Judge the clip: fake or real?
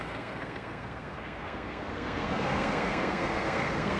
fake